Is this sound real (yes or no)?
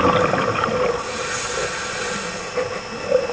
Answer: yes